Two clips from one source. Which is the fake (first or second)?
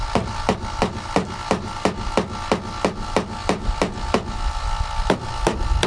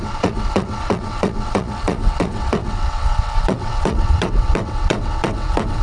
second